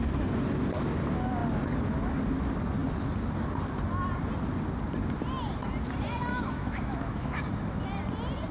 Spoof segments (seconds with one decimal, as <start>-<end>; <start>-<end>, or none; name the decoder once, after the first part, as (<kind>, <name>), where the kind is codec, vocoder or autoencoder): 6.3-7.4 (autoencoder, DAC-VAE)